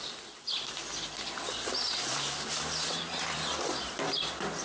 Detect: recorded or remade remade